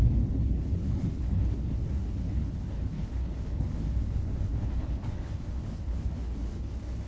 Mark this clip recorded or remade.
remade